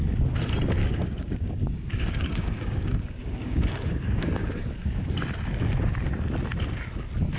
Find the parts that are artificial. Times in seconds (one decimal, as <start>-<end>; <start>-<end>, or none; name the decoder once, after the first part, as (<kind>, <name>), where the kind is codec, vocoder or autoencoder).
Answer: 0.8-5.1 (codec, DAC)